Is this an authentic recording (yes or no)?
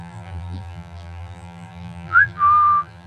no